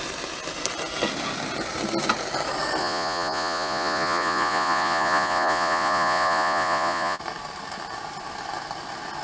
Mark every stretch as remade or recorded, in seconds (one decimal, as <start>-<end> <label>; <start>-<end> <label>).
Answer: 0.0-2.8 recorded; 2.8-7.2 remade; 7.2-9.2 recorded